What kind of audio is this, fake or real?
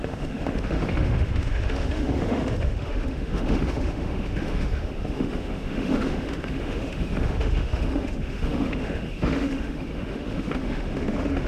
fake